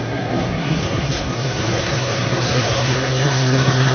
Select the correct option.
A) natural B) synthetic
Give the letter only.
B